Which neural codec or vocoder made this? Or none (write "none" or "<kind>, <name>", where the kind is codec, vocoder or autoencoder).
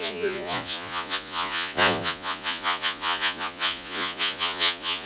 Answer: vocoder, Vocos